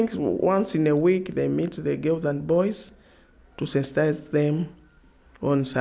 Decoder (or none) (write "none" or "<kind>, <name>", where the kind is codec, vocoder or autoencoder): none